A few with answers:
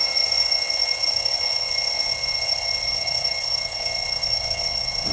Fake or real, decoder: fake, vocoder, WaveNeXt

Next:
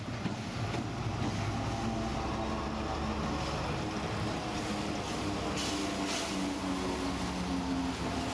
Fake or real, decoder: real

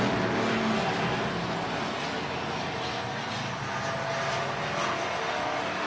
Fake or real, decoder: real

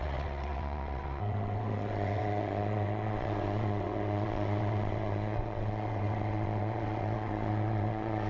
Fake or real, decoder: fake, vocoder, WaveNeXt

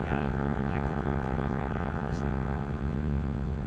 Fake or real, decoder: fake, vocoder, WaveNeXt